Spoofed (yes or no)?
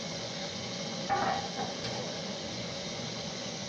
yes